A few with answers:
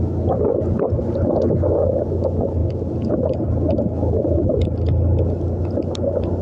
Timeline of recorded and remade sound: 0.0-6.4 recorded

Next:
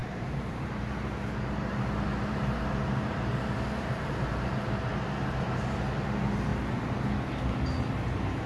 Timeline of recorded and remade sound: 0.0-4.9 remade; 4.9-8.5 recorded

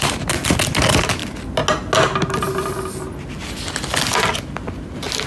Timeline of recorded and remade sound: 0.0-5.3 recorded

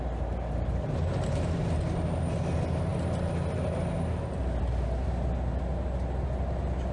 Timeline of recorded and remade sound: 0.0-6.9 recorded

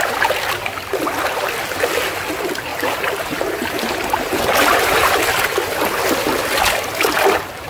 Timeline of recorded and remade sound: 0.0-2.7 recorded; 2.7-5.4 remade; 5.4-7.7 recorded

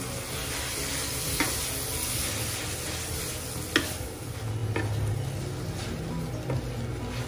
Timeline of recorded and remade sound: 0.0-7.3 recorded

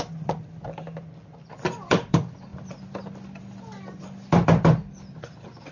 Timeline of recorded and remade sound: 0.0-5.7 remade

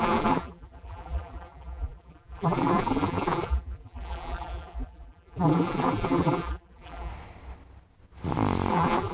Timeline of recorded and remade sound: 0.0-7.1 remade; 7.1-8.7 recorded; 8.7-9.1 remade